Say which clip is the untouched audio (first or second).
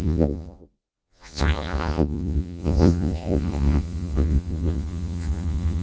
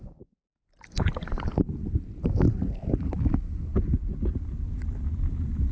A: second